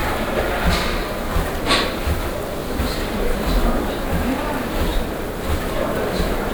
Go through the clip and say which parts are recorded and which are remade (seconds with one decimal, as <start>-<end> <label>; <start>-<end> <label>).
0.0-2.6 recorded; 2.6-3.9 remade; 3.9-4.9 recorded; 4.9-5.8 remade; 5.8-6.5 recorded